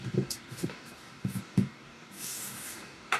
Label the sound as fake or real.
fake